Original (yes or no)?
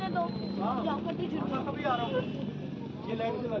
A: yes